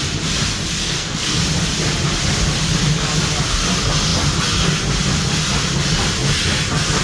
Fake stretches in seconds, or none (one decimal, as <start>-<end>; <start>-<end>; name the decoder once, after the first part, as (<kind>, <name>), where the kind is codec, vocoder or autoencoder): 0.8-1.4 (codec, SNAC)